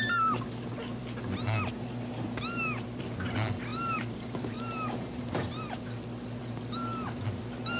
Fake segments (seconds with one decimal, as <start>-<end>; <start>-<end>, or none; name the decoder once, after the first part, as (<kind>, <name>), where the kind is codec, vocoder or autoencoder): 3.7-5.8 (vocoder, BigVGAN v2)